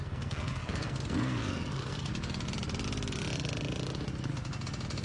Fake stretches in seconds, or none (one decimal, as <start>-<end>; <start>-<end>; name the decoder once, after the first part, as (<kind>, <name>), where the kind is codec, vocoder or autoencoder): 0.0-2.1 (codec, SNAC)